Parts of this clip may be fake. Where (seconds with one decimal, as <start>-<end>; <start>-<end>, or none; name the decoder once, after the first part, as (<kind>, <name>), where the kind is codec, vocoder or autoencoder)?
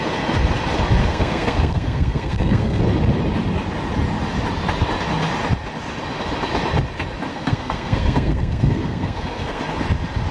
1.0-2.8 (codec, SNAC); 7.3-9.6